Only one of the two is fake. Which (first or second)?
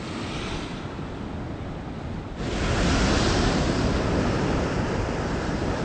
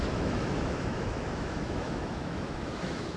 second